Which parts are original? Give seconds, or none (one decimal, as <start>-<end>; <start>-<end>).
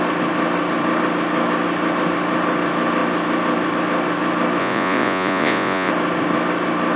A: 0.0-4.6; 5.9-7.0